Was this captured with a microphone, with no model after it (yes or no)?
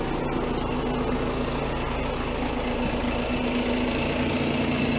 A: yes